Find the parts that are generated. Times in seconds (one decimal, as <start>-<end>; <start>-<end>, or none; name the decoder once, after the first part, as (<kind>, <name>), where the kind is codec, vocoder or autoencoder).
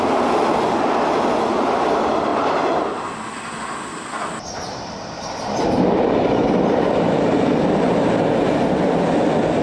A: 3.9-8.1 (vocoder, BigVGAN v2)